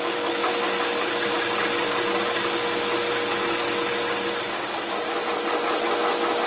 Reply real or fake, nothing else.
real